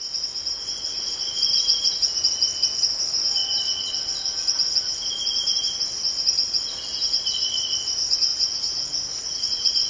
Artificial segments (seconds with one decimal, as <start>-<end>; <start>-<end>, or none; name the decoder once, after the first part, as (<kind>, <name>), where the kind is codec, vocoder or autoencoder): none